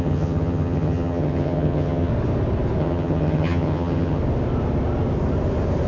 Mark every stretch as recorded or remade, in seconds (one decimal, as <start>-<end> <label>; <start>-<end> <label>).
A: 0.0-2.1 remade; 2.1-2.8 recorded; 2.8-4.2 remade; 4.2-5.9 recorded